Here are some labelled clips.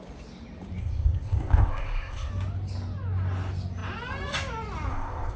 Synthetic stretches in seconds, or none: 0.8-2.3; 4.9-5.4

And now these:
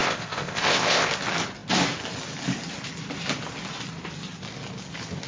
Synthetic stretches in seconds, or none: 0.0-1.1

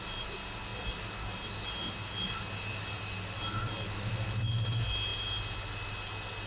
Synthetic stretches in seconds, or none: none

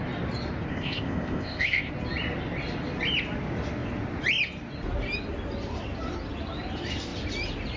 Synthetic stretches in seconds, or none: 0.7-1.9

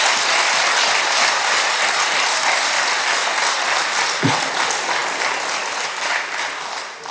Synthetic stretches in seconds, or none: none

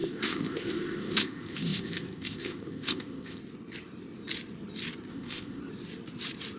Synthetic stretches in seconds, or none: 0.0-3.4; 5.1-5.6

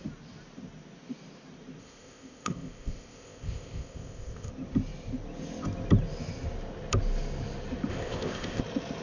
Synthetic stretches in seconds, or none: 1.8-4.5; 7.9-8.6